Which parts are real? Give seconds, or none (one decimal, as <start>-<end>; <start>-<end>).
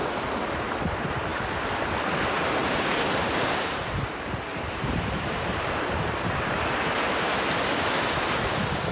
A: 0.0-2.6; 4.1-4.5; 7.6-8.9